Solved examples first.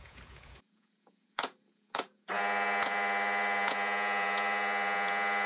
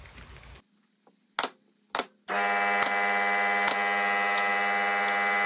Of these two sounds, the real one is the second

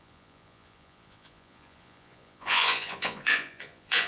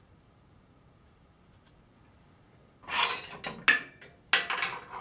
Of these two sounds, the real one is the second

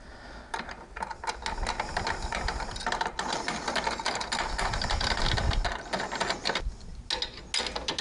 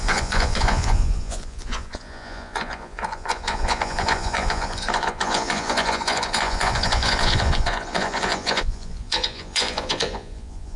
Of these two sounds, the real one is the first